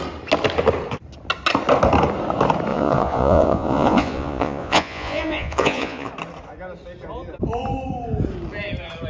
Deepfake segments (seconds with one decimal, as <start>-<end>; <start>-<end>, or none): 2.7-6.1